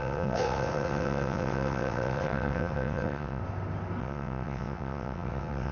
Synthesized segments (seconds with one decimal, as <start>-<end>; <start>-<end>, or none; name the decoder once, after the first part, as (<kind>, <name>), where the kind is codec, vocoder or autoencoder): 0.0-3.4 (vocoder, WaveNeXt); 4.0-5.7